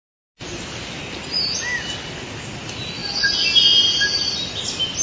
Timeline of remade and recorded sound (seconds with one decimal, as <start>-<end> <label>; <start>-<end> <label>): 0.0-5.0 recorded